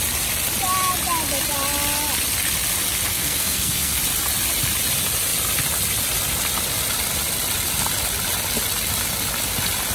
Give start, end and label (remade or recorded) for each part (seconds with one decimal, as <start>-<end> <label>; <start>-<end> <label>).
0.0-3.1 recorded; 3.1-4.0 remade; 4.0-9.9 recorded